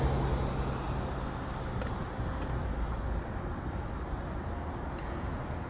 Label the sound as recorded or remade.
recorded